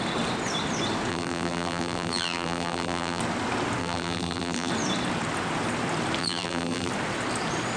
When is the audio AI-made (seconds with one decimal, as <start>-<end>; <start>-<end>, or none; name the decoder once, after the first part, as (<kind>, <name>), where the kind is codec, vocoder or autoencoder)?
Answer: 1.1-3.2 (vocoder, BigVGAN v2); 3.8-4.7; 6.2-6.9